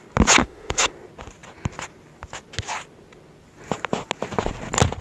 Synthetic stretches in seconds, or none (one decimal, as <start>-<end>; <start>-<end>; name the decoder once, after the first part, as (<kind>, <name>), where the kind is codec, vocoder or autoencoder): 0.4-0.9 (autoencoder, DAC-VAE)

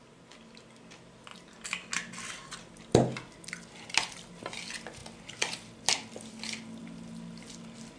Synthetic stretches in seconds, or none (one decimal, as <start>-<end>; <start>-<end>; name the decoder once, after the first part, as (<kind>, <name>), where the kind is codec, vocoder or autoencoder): none